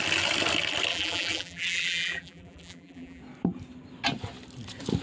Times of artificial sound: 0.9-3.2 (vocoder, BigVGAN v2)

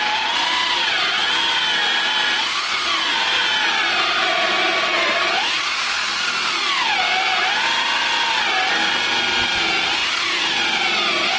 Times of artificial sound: 10.0-10.5 (vocoder, BigVGAN v2)

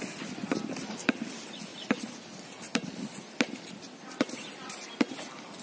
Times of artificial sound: none

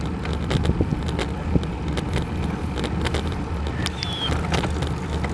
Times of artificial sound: none

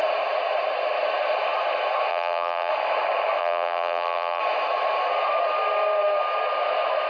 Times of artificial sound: 2.1-2.7 (vocoder, BigVGAN v2); 3.4-4.4

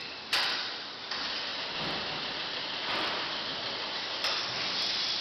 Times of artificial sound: none

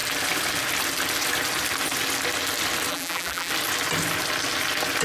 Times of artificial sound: 2.9-3.5 (vocoder, BigVGAN v2)